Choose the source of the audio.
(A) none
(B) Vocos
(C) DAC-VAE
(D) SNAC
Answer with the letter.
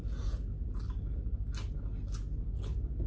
A